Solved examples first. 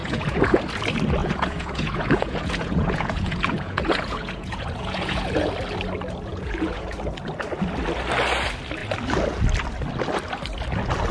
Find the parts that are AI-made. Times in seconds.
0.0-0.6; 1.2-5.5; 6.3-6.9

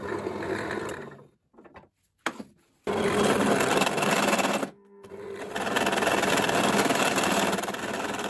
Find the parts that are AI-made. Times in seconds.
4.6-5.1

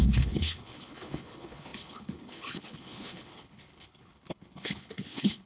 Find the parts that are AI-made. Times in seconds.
0.0-5.5

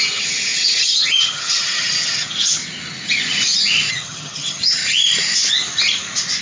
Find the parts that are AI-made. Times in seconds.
0.0-2.6; 3.9-4.8